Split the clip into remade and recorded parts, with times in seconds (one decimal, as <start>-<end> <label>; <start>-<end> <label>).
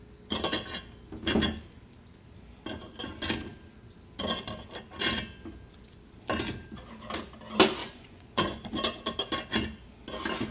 0.0-7.8 recorded; 7.8-8.7 remade; 8.7-10.5 recorded